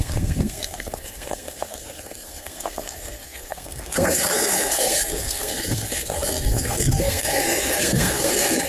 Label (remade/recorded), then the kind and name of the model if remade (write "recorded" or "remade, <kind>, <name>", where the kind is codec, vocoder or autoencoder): remade, codec, SNAC